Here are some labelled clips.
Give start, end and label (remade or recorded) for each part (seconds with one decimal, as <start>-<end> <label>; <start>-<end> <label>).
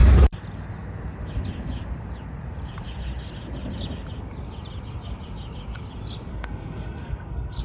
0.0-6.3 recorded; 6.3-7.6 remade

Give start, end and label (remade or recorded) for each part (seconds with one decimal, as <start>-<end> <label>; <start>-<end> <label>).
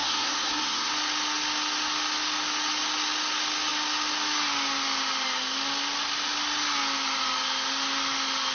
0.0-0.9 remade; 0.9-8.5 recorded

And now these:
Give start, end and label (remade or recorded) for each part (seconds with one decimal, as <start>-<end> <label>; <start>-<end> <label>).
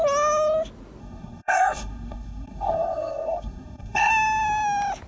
0.0-1.0 recorded; 1.0-4.1 remade; 4.1-5.1 recorded